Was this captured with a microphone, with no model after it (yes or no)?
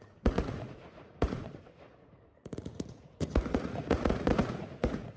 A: no